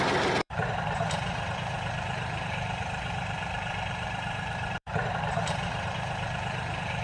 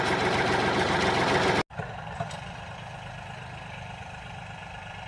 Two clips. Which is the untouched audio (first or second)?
second